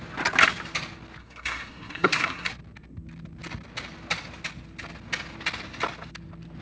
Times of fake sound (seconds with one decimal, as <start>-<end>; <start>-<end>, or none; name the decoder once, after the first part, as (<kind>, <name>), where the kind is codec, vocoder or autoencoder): 1.2-2.5 (codec, SNAC)

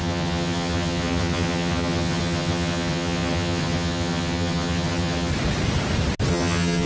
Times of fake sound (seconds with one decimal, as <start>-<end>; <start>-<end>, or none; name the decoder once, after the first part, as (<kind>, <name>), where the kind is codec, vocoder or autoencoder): 0.0-5.3 (vocoder, HiFi-GAN); 6.3-6.9

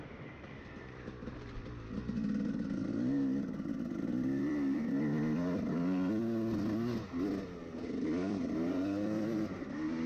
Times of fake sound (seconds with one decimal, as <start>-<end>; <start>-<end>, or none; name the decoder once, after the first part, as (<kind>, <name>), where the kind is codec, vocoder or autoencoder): 0.0-2.8 (vocoder, BigVGAN v2); 4.4-6.2; 7.6-10.1

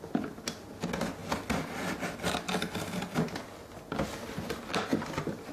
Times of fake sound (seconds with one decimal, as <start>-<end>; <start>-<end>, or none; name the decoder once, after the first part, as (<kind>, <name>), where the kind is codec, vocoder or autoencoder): none

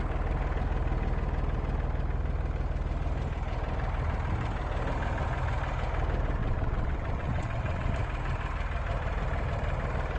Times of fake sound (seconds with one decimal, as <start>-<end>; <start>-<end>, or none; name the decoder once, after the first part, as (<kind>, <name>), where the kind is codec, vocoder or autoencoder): 6.4-7.9 (vocoder, WaveNeXt)

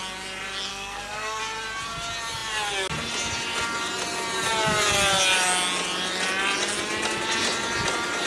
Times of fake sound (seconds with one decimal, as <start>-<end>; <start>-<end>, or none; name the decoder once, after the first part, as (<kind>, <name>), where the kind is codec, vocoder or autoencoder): 0.7-1.4 (codec, SNAC)

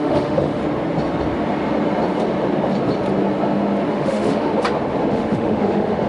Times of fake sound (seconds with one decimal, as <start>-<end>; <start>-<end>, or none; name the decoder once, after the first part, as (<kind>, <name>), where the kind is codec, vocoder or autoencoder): 0.0-0.6 (autoencoder, DAC-VAE); 3.9-4.5; 5.1-6.1

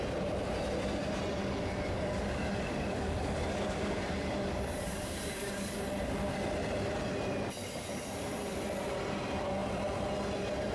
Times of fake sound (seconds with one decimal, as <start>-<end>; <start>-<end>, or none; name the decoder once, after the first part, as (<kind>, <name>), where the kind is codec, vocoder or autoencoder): 1.4-5.8 (codec, DAC)